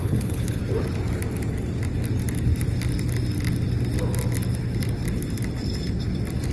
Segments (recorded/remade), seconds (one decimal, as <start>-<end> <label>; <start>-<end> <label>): 0.0-0.6 remade; 0.6-6.5 recorded